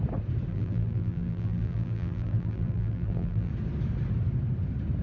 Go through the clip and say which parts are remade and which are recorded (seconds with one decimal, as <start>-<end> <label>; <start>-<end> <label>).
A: 0.0-0.5 recorded; 0.5-3.5 remade; 3.5-5.0 recorded